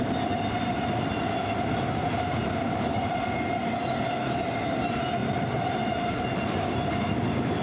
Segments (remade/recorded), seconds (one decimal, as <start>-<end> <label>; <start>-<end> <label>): 0.0-2.4 recorded; 2.4-3.2 remade; 3.2-5.2 recorded; 5.2-6.2 remade; 6.2-7.6 recorded